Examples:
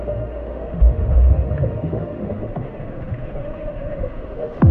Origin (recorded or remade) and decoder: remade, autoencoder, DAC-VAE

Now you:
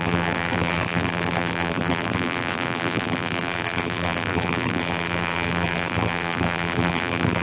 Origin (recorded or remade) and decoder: remade, vocoder, BigVGAN v2